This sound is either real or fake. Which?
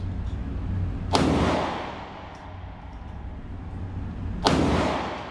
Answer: real